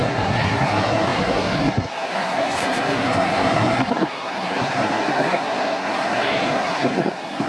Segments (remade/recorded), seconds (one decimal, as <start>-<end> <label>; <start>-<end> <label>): 0.0-7.5 remade

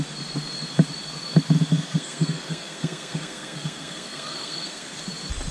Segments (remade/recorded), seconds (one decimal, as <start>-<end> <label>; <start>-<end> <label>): 0.0-1.7 recorded; 1.7-5.0 remade; 5.0-5.5 recorded

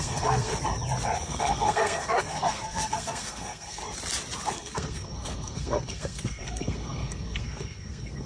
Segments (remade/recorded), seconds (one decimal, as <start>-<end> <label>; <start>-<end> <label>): 0.0-0.5 remade; 0.5-1.2 recorded; 1.2-3.8 remade; 3.8-4.5 recorded; 4.5-8.3 remade

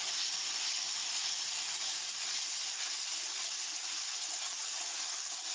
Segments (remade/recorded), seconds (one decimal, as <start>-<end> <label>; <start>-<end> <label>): 0.0-5.5 recorded

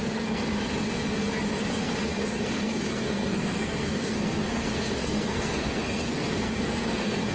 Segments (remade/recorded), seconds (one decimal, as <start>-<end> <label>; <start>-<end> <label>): 0.0-0.4 remade; 0.4-1.7 recorded; 1.7-7.3 remade